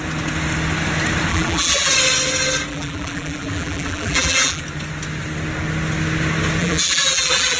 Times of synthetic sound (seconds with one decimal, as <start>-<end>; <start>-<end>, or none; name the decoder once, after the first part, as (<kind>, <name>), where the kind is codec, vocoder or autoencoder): 1.3-1.9 (vocoder, BigVGAN v2); 2.7-4.6; 6.6-7.6